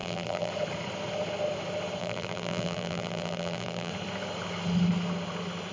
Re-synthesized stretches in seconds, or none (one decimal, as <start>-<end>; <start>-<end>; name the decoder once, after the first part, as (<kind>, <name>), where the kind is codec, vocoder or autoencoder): 0.0-0.5 (vocoder, BigVGAN v2); 2.0-3.9